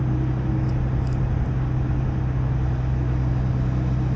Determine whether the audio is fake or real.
real